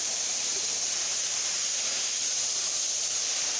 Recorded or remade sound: remade